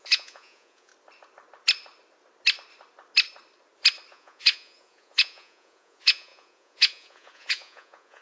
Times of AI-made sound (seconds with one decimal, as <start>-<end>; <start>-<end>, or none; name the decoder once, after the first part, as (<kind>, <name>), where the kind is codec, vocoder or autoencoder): 0.0-0.9 (vocoder, Vocos); 4.1-8.2